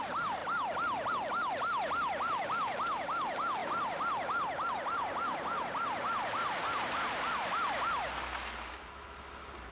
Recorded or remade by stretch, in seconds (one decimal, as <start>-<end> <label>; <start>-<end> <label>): 0.0-9.7 recorded